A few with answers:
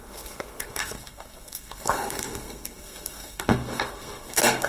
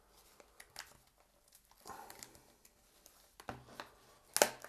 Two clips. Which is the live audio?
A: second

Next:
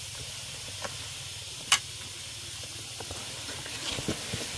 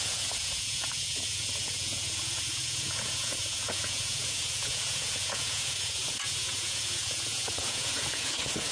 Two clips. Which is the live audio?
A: first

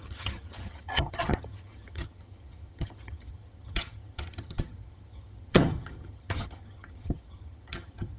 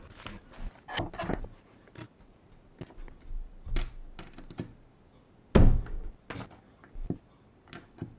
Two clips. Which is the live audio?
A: second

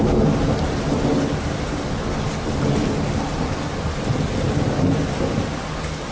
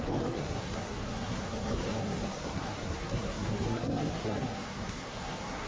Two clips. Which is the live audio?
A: first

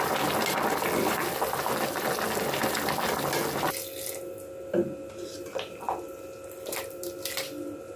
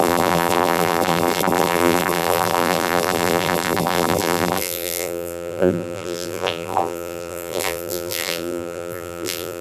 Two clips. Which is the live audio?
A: first